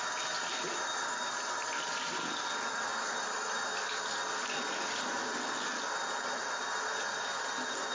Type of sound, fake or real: real